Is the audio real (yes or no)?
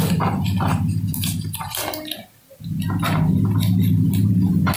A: yes